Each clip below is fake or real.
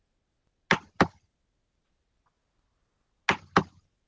real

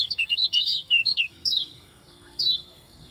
fake